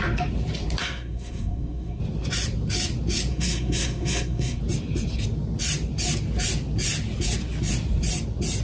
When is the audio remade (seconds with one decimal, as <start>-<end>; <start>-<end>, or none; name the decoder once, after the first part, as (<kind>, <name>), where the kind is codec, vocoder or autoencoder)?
0.8-2.0 (codec, SNAC); 3.3-4.6